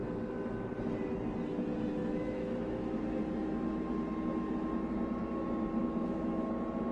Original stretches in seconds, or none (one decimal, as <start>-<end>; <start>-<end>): 0.0-2.0; 3.2-5.8; 6.5-6.9